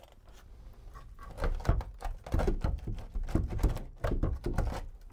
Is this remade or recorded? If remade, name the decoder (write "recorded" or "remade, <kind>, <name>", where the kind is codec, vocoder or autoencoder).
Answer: recorded